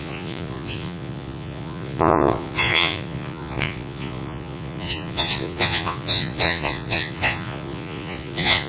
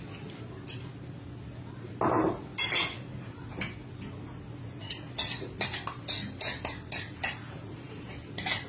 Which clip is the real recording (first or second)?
second